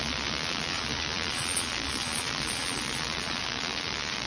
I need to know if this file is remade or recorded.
remade